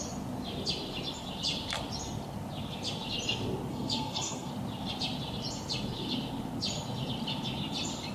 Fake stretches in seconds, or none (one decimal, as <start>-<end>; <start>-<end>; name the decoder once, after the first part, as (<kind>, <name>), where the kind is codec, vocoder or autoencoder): 3.7-4.5 (codec, SNAC)